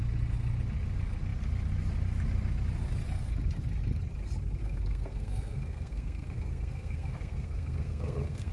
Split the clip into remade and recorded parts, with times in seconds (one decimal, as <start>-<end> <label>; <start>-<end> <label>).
0.0-4.6 recorded; 4.6-8.5 remade